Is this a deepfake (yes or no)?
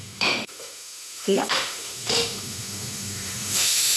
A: yes